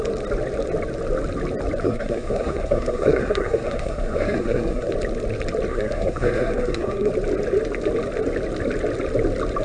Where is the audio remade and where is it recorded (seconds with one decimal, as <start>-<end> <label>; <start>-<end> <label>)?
0.0-1.8 recorded; 1.8-4.9 remade; 4.9-5.7 recorded; 5.7-7.1 remade; 7.1-9.6 recorded